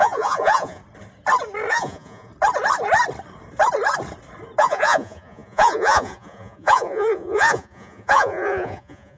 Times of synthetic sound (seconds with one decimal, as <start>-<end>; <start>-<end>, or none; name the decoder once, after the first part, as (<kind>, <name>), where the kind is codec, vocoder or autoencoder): 0.0-0.8 (vocoder, Vocos); 1.7-2.3; 4.6-9.2